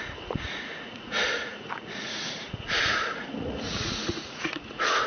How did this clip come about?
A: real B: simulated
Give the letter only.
B